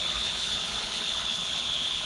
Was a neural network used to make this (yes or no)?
yes